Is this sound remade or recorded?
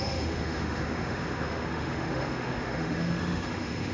remade